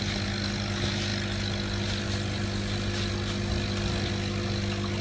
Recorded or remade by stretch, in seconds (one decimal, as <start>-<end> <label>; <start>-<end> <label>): 0.0-5.0 recorded